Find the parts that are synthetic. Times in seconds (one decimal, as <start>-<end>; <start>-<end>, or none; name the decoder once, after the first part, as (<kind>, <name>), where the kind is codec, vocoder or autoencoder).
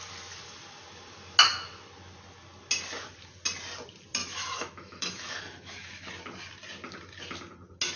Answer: 4.2-6.1 (autoencoder, DAC-VAE)